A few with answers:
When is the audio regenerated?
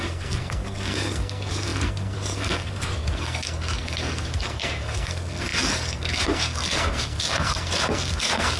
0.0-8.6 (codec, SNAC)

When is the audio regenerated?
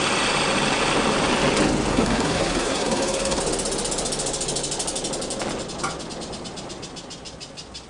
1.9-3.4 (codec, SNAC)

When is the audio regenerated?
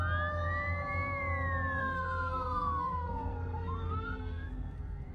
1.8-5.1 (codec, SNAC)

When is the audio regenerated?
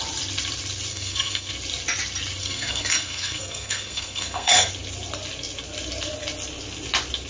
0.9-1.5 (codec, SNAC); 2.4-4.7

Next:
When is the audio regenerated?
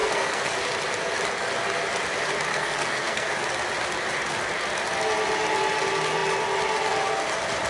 0.0-0.5 (codec, SNAC); 2.5-3.3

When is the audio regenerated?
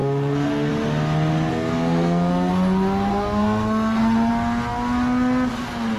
0.0-0.7 (codec, SNAC); 1.5-2.5; 3.1-4.3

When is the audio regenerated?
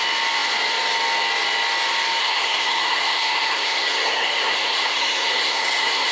2.2-6.1 (codec, SNAC)